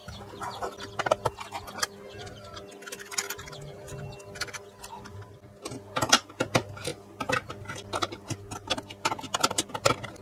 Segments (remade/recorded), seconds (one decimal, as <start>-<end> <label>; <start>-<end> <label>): 0.0-10.2 recorded